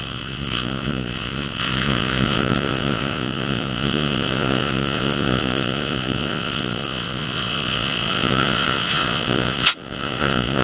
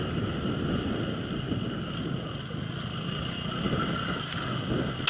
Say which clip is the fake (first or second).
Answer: first